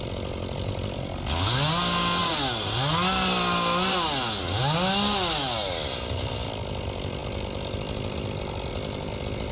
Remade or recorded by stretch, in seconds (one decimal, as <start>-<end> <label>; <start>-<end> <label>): 0.0-9.5 recorded